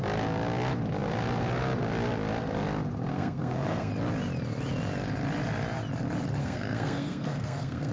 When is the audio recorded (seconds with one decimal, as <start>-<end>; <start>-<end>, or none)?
0.0-3.1; 3.9-6.4